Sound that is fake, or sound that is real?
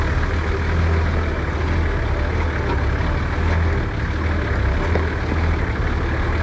real